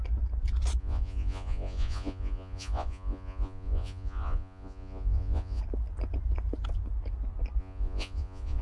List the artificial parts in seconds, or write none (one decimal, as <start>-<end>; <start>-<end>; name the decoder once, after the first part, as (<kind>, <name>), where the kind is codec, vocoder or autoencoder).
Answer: 0.8-5.6 (vocoder, Vocos); 7.6-8.6